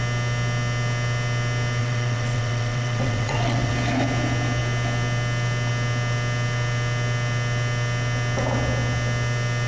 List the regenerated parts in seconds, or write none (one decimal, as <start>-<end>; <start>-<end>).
1.8-3.7